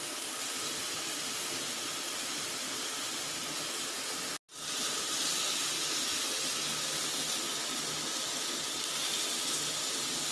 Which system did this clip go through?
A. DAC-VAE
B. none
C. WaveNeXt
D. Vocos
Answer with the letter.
B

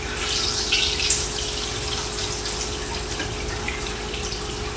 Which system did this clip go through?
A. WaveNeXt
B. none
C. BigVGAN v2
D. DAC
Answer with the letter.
B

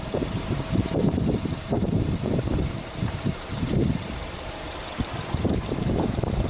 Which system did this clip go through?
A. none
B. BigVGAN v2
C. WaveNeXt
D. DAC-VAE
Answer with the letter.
B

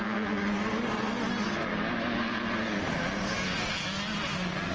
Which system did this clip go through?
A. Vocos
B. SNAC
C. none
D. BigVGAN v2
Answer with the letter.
C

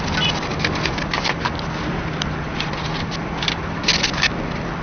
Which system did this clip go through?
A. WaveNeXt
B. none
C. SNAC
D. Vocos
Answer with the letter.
B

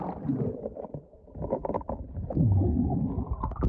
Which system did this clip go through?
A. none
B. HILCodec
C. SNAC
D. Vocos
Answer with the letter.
A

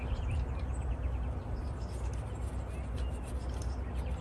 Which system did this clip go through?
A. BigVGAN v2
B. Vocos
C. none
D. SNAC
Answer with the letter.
C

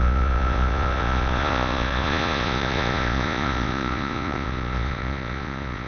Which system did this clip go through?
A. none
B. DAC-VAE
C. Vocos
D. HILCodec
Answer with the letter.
C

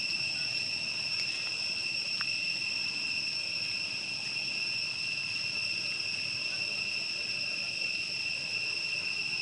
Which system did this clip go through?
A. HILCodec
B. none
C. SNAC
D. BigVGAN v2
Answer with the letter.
B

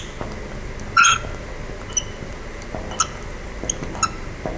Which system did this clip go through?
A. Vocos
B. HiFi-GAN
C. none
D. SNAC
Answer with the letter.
C